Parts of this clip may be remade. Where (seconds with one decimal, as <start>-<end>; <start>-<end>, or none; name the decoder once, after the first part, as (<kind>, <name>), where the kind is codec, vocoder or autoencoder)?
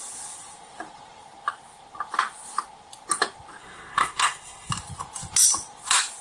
3.6-4.7 (codec, SNAC)